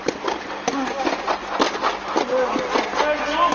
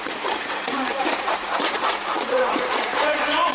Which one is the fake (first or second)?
second